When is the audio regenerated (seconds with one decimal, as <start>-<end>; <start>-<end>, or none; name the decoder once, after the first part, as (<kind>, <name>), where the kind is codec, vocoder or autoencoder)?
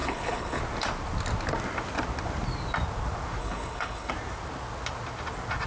0.0-0.6 (codec, HILCodec); 3.4-4.1